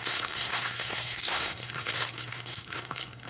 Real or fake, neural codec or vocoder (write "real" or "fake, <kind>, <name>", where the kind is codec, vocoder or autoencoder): fake, codec, SNAC